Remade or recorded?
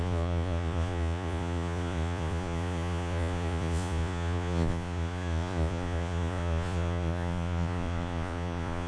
remade